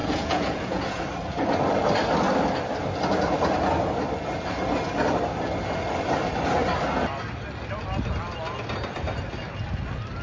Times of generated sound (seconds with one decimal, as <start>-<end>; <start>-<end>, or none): 0.0-1.0